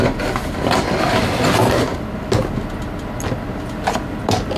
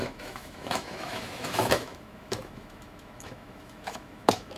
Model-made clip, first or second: second